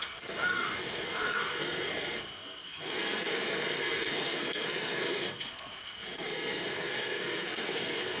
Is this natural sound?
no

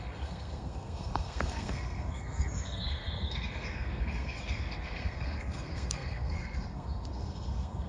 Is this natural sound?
no